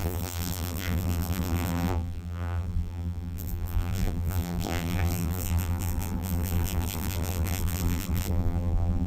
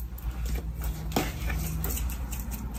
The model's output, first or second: first